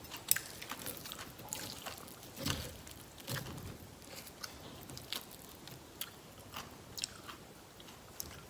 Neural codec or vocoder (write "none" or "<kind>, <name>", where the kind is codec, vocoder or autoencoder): none